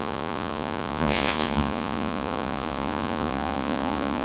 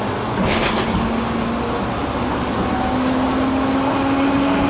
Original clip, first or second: second